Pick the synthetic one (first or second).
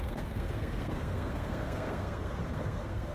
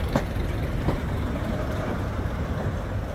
first